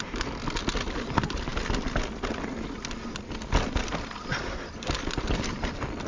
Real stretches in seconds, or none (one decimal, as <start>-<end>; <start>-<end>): 0.0-6.1

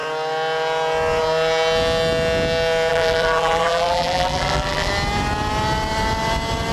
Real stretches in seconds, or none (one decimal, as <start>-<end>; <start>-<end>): 0.0-2.9; 4.9-6.7

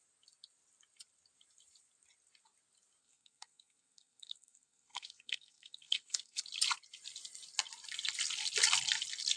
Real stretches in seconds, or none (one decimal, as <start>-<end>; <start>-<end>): 0.0-3.0; 6.4-9.4

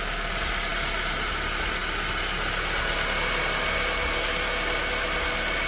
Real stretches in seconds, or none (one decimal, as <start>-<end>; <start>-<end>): 0.0-5.7

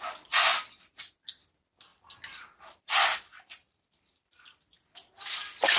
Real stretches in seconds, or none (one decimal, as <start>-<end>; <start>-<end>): 0.0-1.9; 4.4-5.8

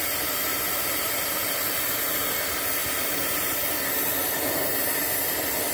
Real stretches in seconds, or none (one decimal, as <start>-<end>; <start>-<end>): 0.0-5.7